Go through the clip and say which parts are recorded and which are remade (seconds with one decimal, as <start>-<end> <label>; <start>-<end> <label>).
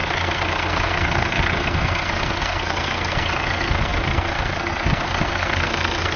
0.0-6.2 remade